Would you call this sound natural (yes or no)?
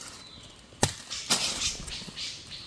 yes